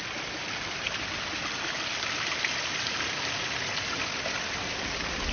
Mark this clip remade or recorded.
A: recorded